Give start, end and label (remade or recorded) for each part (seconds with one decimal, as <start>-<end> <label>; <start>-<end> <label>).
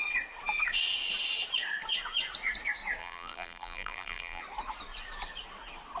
0.0-3.0 recorded; 3.0-4.4 remade; 4.4-6.0 recorded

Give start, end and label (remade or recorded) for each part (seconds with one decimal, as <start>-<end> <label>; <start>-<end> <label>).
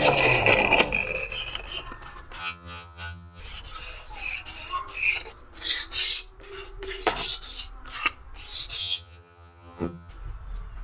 0.0-2.4 recorded; 2.4-3.4 remade; 3.4-8.8 recorded; 8.8-10.1 remade; 10.1-10.8 recorded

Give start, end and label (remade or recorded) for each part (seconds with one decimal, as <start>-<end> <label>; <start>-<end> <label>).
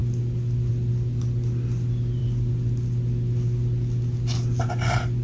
0.0-5.2 recorded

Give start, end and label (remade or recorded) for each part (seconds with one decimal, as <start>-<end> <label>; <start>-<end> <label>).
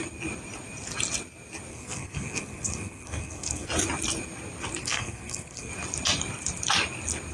0.0-1.7 recorded; 1.7-3.7 remade; 3.7-4.8 recorded; 4.8-5.7 remade; 5.7-7.3 recorded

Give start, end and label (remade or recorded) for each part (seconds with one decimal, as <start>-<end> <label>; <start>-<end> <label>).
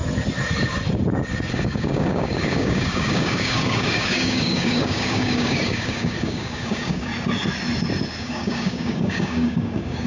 0.0-1.5 recorded; 1.5-7.1 remade; 7.1-8.2 recorded; 8.2-10.1 remade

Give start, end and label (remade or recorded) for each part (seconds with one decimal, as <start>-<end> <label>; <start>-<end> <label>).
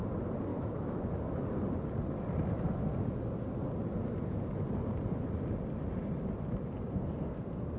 0.0-0.5 recorded; 0.5-1.1 remade; 1.1-7.8 recorded